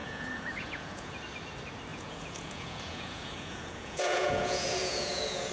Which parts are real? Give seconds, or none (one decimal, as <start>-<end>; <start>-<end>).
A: 1.2-1.9